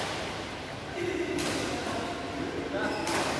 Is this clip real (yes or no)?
yes